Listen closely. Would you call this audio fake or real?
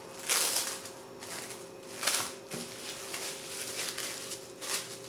real